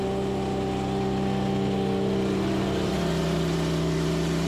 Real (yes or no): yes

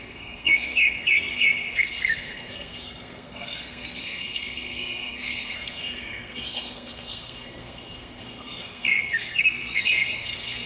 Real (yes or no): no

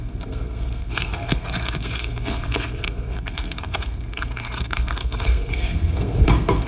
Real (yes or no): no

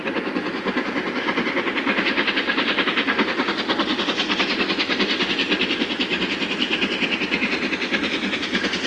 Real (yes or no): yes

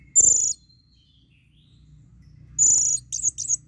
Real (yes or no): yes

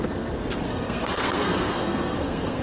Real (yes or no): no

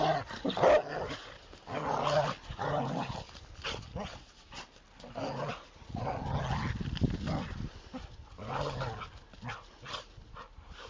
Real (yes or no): yes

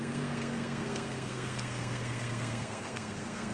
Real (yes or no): no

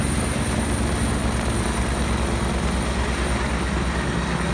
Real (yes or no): yes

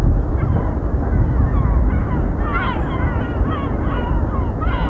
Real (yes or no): yes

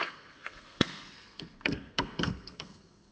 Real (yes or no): no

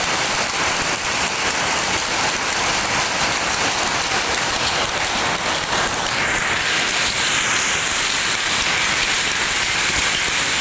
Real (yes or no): yes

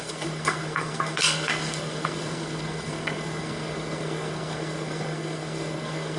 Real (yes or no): no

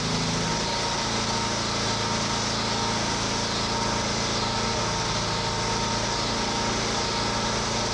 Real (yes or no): yes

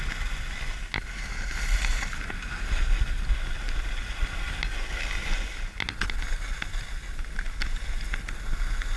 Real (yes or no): yes